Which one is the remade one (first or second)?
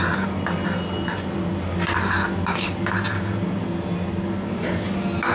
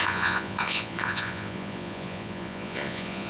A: second